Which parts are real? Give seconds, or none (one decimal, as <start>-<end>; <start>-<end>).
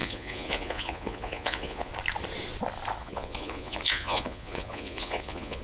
1.9-3.0